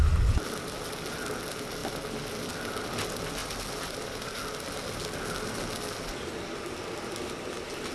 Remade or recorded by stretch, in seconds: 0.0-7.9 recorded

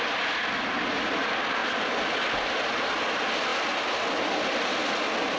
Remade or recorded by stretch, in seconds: 0.0-5.4 recorded

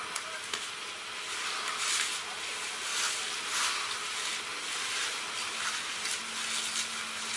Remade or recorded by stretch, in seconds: 0.0-7.4 recorded

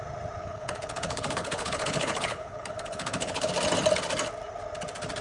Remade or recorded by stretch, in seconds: 0.0-0.4 recorded; 0.4-3.5 remade; 3.5-5.2 recorded

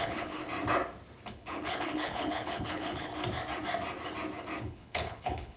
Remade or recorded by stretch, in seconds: 0.0-0.4 remade; 0.4-1.3 recorded; 1.3-3.1 remade; 3.1-4.6 recorded; 4.6-5.6 remade

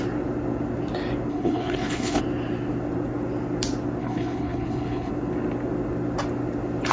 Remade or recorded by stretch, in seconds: 0.0-1.3 recorded; 1.3-2.2 remade; 2.2-4.0 recorded; 4.0-5.1 remade; 5.1-6.9 recorded